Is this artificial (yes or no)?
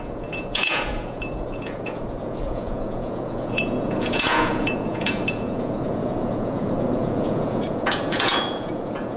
yes